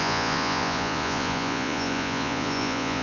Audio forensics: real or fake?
fake